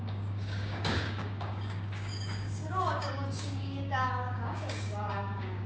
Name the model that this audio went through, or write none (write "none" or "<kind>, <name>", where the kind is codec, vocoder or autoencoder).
codec, DAC